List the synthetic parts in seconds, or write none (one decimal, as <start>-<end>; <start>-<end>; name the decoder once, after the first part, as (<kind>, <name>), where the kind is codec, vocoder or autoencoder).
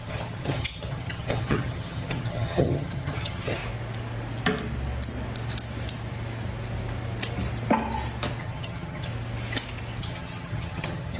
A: 0.0-3.6 (vocoder, HiFi-GAN); 8.4-9.1; 10.0-11.2